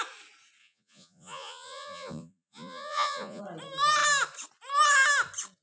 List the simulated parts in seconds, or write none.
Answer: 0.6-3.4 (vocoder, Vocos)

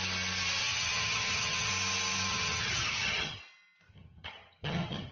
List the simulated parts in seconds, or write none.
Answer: 0.6-1.7 (vocoder, HiFi-GAN); 2.3-3.4; 3.9-5.1

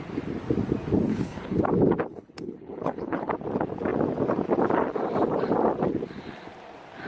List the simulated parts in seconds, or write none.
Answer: 1.1-1.6 (codec, HILCodec); 2.1-3.3